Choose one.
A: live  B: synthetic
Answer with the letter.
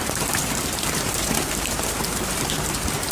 B